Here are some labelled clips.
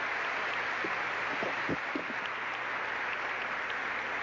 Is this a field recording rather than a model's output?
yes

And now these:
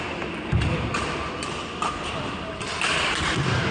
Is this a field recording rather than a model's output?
yes